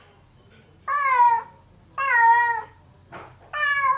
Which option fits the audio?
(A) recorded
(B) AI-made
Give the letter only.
A